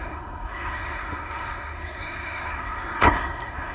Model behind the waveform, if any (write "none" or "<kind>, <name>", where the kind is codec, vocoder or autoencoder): codec, SNAC